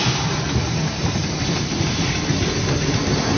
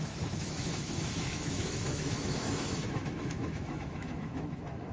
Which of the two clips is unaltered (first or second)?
first